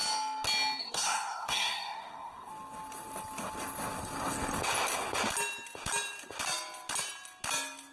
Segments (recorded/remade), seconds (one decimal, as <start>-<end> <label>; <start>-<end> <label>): 0.0-0.8 recorded; 0.8-2.5 remade; 2.5-7.9 recorded